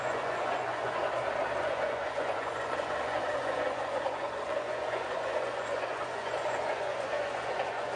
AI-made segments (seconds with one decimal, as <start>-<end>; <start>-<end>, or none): 0.0-1.0; 1.6-8.0